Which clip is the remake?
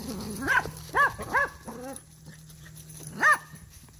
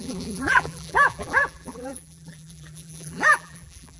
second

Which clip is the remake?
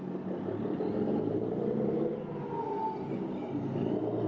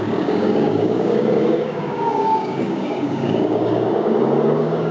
second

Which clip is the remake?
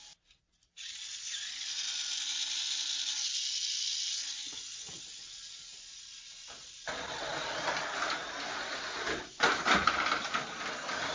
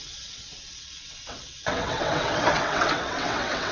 second